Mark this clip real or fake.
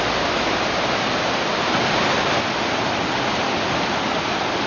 real